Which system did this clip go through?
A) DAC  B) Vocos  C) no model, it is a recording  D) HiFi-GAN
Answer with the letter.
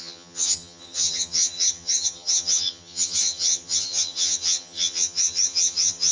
D